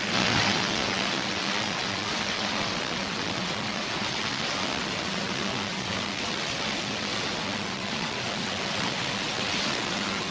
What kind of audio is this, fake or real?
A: fake